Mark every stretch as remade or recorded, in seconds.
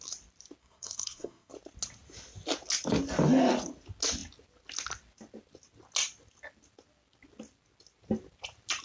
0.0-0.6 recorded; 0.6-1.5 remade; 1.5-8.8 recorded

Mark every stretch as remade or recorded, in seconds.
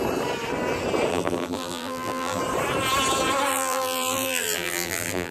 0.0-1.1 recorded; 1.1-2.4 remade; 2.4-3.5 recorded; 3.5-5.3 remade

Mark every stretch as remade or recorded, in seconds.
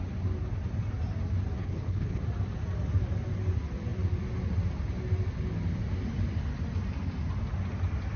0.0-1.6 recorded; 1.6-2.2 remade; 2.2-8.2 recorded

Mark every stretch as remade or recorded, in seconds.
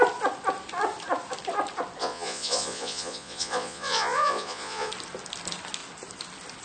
0.0-2.0 recorded; 2.0-4.9 remade; 4.9-6.6 recorded